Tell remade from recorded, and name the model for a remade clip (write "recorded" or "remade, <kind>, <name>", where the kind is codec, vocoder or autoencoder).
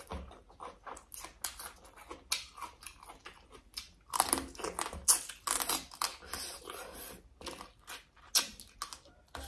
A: recorded